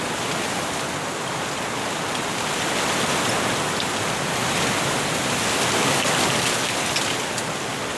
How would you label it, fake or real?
real